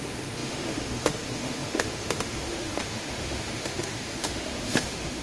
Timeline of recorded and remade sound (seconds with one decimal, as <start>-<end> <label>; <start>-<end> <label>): 0.0-5.2 remade